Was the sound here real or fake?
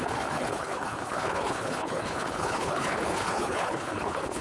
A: fake